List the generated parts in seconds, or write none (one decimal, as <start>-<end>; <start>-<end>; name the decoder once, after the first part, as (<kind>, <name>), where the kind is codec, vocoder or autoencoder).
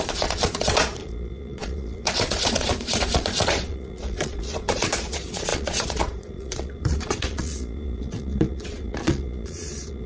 0.0-10.1 (vocoder, Vocos)